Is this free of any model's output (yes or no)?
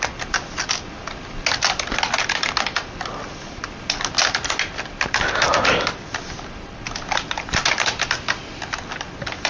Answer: yes